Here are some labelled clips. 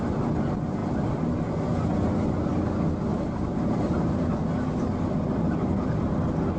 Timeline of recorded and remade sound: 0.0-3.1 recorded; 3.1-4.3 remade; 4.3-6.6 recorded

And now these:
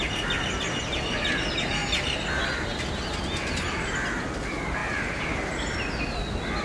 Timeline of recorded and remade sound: 0.0-6.6 recorded

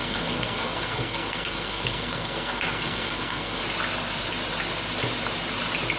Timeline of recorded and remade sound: 0.0-3.6 remade; 3.6-6.0 recorded

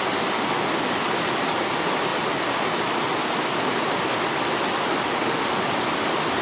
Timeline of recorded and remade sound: 0.0-5.0 recorded; 5.0-5.6 remade; 5.6-6.4 recorded

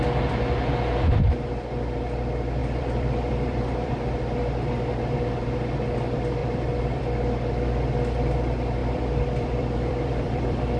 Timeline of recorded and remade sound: 0.0-2.6 recorded; 2.6-3.9 remade; 3.9-6.4 recorded; 6.4-7.0 remade; 7.0-8.8 recorded; 8.8-10.8 remade

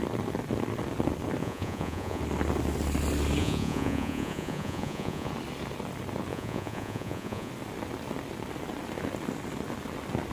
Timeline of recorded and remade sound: 0.0-1.4 recorded; 1.4-2.2 remade; 2.2-3.4 recorded; 3.4-5.3 remade; 5.3-6.3 recorded; 6.3-7.5 remade; 7.5-10.3 recorded

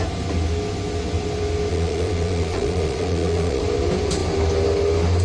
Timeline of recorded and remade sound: 0.0-1.7 recorded; 1.7-3.6 remade; 3.6-5.2 recorded